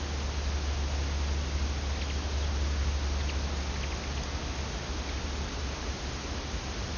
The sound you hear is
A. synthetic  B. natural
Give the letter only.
B